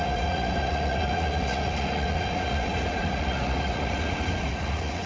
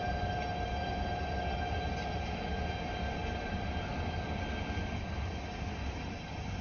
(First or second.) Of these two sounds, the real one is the second